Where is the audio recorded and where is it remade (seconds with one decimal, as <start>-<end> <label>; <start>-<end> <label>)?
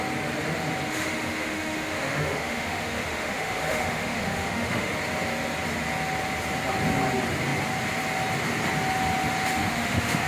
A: 0.0-0.9 recorded; 0.9-4.9 remade; 4.9-9.5 recorded; 9.5-10.3 remade